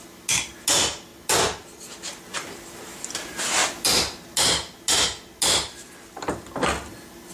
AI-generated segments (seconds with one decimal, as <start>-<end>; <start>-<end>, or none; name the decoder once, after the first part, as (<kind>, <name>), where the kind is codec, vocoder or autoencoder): none